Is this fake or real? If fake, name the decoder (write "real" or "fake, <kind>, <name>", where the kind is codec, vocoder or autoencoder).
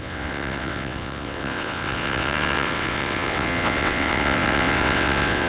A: fake, vocoder, WaveNeXt